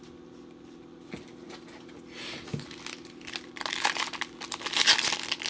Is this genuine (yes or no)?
yes